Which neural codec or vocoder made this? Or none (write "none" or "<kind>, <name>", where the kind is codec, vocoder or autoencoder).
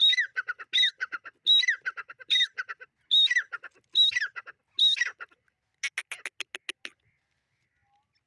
none